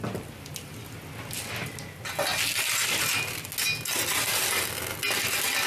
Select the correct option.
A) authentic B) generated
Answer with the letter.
A